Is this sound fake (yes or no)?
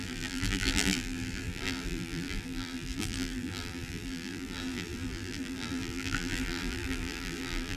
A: yes